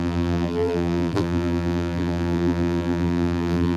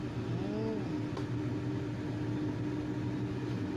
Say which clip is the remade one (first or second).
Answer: first